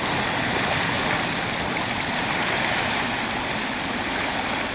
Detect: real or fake real